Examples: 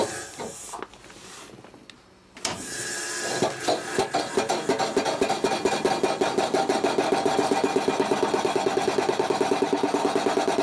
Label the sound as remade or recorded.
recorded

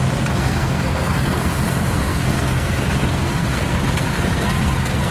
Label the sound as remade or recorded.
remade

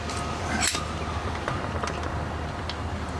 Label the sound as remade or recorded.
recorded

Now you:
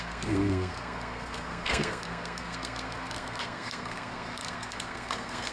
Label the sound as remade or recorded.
remade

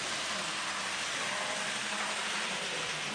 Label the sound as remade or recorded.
recorded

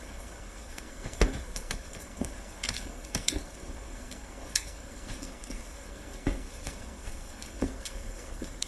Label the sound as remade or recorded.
remade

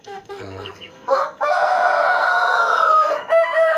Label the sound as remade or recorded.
remade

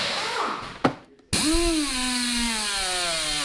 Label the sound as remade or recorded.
recorded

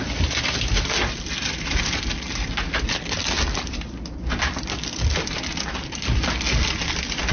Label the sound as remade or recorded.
recorded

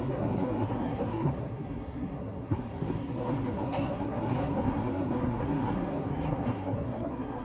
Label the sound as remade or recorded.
remade